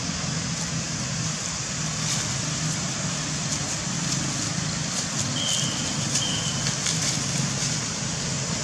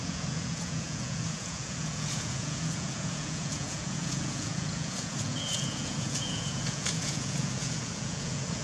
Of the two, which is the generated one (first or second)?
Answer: second